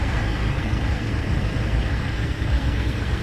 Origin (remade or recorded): remade